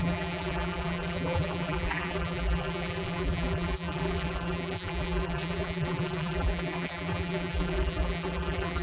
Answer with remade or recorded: remade